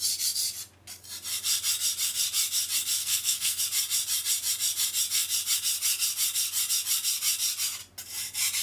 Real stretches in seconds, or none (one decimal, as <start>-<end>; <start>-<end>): 0.0-3.0; 3.6-8.6